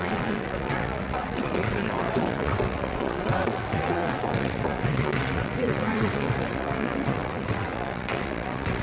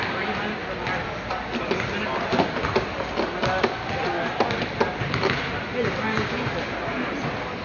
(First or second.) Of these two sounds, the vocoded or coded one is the first